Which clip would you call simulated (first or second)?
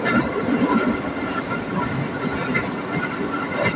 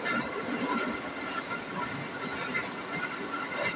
first